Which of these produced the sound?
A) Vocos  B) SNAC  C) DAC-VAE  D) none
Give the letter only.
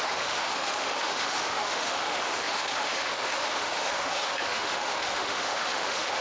C